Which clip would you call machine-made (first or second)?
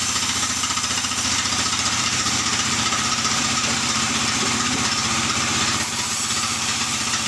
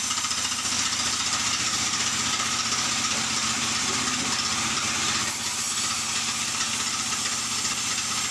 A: first